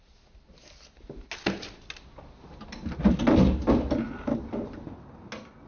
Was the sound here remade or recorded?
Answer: recorded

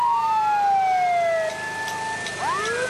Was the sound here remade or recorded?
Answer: recorded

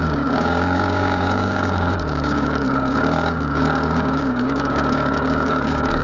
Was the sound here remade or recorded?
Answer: remade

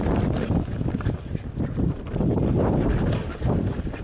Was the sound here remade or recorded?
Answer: recorded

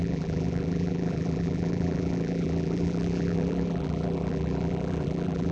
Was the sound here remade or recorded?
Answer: remade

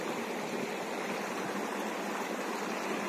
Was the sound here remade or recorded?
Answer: recorded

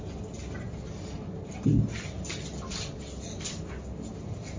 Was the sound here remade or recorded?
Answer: recorded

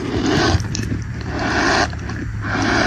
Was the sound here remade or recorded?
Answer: remade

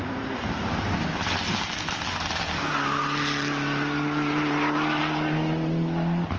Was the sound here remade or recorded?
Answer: recorded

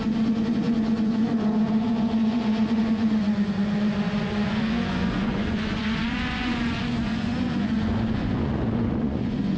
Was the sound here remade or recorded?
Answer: remade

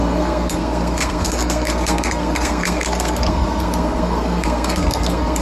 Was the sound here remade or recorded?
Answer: remade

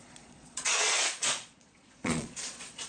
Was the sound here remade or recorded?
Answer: remade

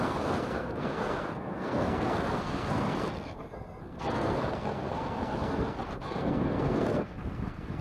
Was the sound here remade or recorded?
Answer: remade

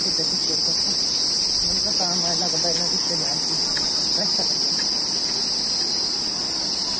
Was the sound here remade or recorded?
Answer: recorded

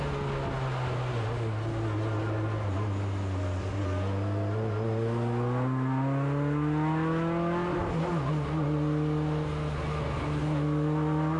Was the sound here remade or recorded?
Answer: recorded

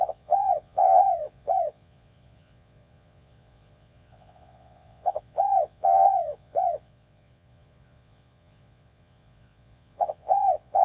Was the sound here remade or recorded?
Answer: remade